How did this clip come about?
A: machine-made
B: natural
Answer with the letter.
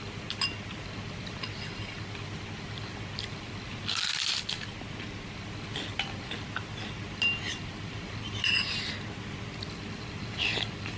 B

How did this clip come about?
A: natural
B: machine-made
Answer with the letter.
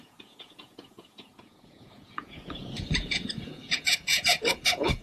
B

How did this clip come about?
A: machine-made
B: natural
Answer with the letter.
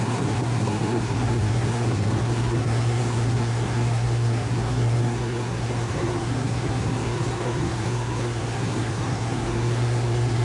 A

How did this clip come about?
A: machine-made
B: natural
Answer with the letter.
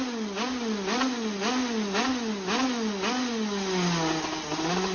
B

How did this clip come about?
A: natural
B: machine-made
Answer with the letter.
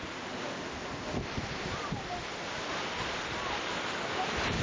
A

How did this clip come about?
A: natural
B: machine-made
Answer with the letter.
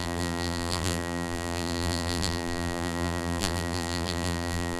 B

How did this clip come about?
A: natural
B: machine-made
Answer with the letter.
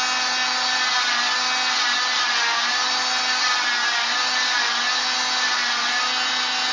A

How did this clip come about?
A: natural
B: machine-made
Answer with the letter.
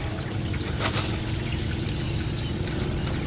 A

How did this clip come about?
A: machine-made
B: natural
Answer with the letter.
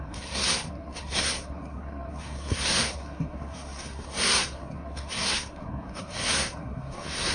A